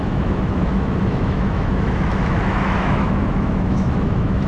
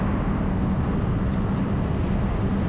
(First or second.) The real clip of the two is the second